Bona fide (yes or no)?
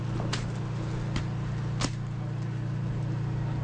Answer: yes